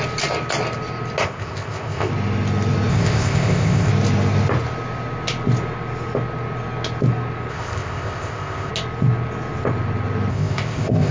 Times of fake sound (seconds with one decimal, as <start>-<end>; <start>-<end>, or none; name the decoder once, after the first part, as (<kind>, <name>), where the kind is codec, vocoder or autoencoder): 1.2-2.1 (codec, ZipCodec); 2.9-3.9; 7.5-8.7; 10.3-11.1

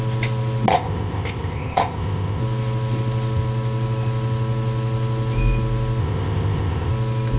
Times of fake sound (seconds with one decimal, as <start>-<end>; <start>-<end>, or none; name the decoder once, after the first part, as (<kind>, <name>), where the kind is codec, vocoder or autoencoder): 0.7-2.4 (codec, ZipCodec); 6.0-6.9